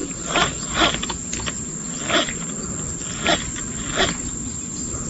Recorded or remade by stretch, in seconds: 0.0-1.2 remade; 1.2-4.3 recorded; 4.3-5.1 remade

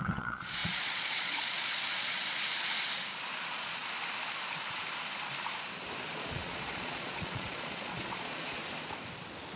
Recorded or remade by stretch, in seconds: 0.0-2.2 remade; 2.2-3.4 recorded; 3.4-3.8 remade; 3.8-6.1 recorded; 6.1-8.6 remade; 8.6-9.6 recorded

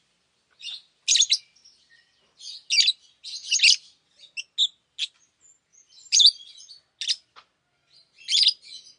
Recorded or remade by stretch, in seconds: 0.0-5.7 recorded; 5.7-6.6 remade; 6.6-9.0 recorded

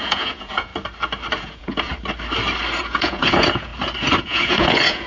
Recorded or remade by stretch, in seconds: 0.0-0.7 remade; 0.7-1.4 recorded; 1.4-1.9 remade; 1.9-2.8 recorded; 2.8-3.7 remade; 3.7-4.2 recorded; 4.2-5.1 remade